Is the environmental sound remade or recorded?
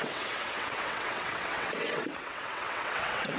remade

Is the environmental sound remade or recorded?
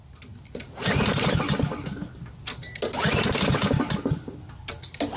recorded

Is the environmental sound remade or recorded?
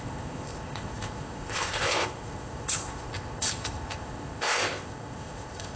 remade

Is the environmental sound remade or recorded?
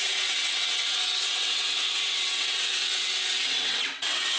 remade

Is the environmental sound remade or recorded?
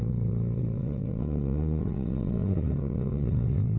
remade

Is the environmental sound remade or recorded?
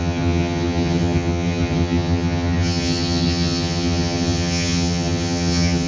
remade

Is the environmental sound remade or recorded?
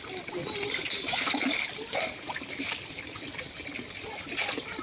recorded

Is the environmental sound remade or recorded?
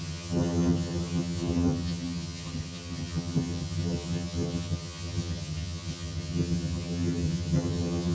remade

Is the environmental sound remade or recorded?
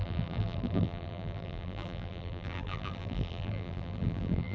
remade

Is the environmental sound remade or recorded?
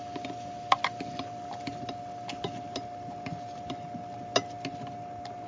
recorded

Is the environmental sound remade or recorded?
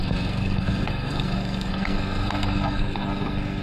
remade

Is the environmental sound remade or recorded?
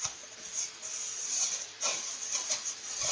remade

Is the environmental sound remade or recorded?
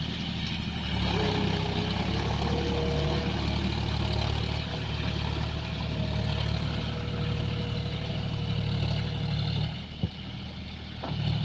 recorded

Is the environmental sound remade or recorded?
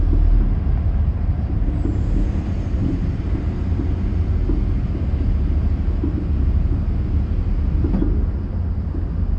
recorded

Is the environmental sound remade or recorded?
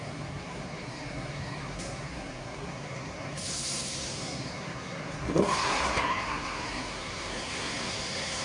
remade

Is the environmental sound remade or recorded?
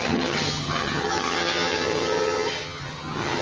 remade